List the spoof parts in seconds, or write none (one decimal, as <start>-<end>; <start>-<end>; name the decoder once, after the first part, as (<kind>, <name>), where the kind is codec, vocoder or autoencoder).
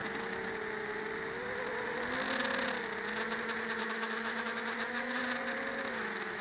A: 3.8-5.2 (autoencoder, DAC-VAE); 5.8-6.4